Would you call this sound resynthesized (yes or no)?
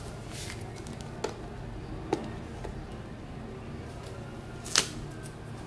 no